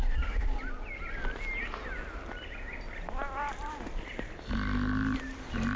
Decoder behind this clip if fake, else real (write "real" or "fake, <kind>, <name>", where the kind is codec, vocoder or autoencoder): real